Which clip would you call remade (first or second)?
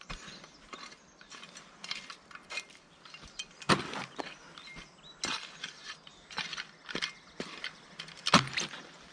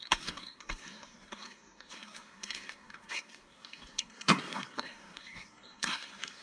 second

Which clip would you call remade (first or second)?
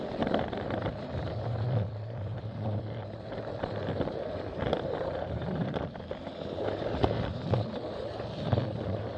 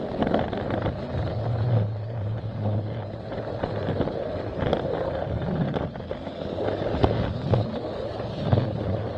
first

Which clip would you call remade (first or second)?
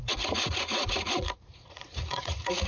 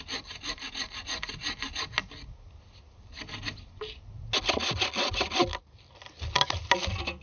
first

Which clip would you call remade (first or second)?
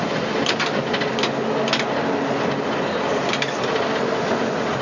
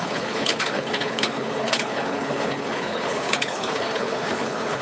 second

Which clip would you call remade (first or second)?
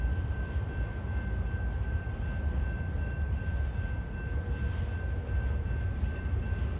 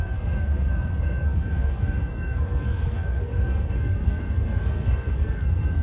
second